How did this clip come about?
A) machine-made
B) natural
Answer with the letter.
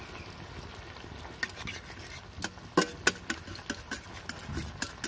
B